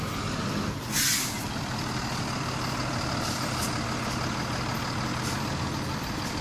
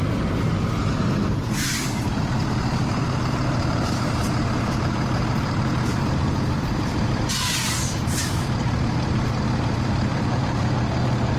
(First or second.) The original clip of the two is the first